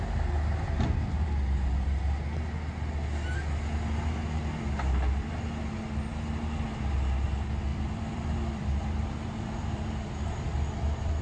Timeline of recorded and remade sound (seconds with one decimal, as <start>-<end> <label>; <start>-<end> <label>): 0.0-7.7 recorded; 7.7-11.2 remade